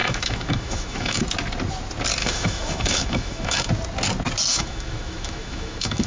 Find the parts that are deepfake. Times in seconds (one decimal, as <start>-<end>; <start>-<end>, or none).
0.0-1.2; 2.2-3.7; 4.5-6.1